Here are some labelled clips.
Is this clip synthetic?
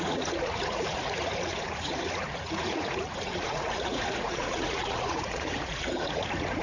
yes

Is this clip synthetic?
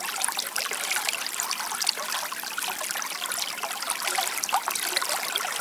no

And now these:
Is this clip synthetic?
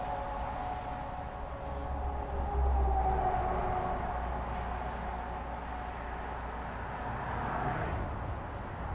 no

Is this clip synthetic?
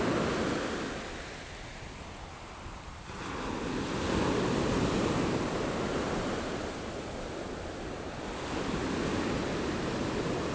no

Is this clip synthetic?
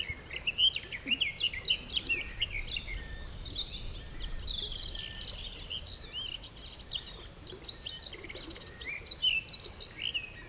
no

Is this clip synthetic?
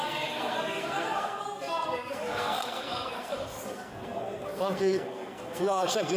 yes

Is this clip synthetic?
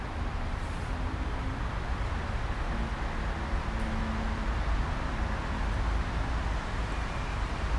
no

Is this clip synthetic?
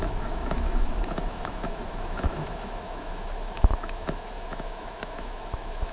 yes